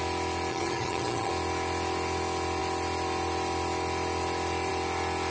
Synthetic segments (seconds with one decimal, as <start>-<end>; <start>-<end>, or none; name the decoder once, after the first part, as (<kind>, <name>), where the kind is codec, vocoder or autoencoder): 0.5-1.3 (vocoder, HiFi-GAN)